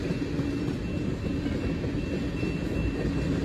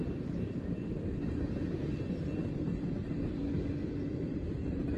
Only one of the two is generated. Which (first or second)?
second